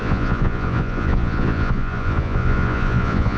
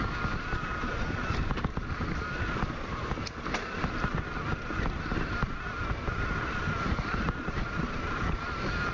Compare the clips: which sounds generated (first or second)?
first